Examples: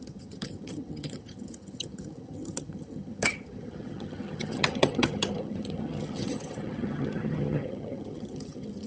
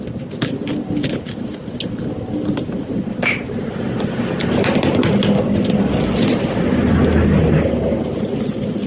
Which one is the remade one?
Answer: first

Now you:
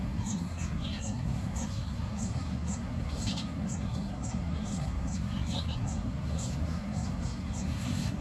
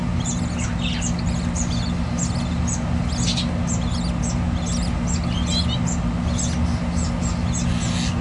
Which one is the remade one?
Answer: first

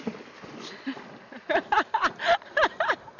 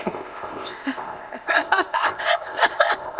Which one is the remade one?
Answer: second